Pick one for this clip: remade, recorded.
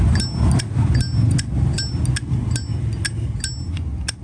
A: recorded